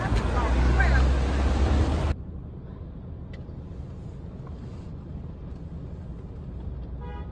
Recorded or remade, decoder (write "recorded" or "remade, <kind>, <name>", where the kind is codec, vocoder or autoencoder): recorded